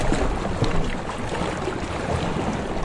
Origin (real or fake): real